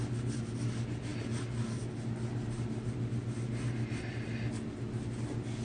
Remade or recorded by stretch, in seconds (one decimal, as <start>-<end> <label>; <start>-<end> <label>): 0.0-5.6 recorded